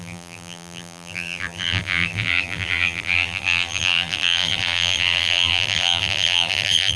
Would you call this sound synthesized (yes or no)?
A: yes